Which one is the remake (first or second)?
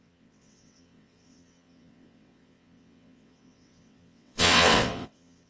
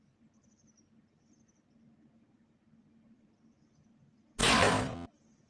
first